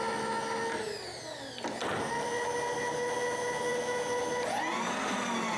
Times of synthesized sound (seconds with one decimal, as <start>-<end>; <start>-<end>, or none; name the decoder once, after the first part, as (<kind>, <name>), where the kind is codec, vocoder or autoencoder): none